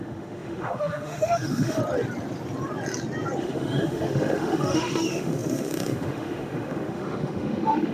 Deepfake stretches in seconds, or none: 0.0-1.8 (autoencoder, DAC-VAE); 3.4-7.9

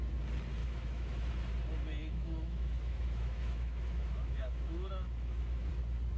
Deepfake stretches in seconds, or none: 0.6-1.3 (autoencoder, DAC-VAE); 2.0-5.7